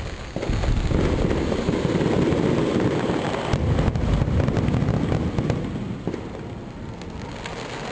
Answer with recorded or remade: recorded